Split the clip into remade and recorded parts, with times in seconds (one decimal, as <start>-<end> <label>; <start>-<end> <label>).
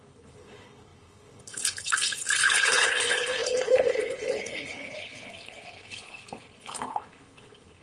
0.0-7.8 remade